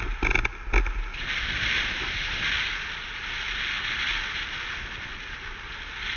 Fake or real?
real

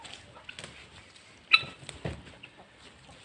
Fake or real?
real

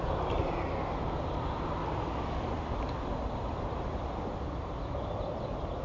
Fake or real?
real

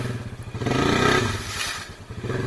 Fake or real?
real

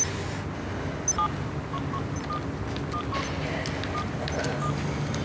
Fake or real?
real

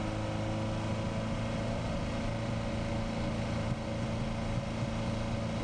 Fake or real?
real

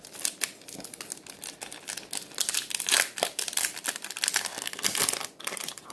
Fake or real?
real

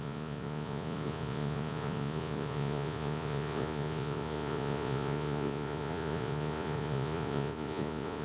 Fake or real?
fake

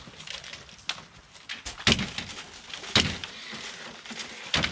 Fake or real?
real